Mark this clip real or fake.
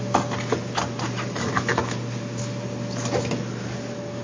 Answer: real